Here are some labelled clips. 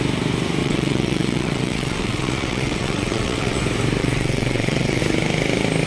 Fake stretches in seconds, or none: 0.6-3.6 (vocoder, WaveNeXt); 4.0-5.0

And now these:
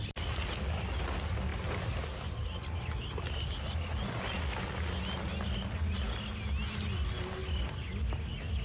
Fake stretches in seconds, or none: none